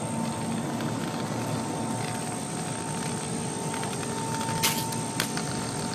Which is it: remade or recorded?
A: recorded